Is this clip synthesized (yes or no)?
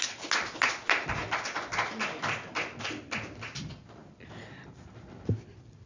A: no